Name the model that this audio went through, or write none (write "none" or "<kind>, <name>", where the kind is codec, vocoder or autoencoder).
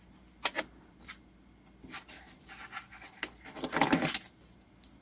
none